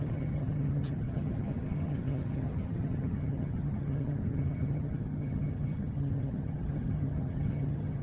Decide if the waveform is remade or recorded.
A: remade